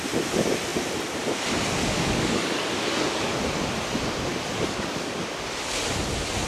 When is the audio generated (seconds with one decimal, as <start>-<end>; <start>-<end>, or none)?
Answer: 1.8-3.4; 4.3-5.2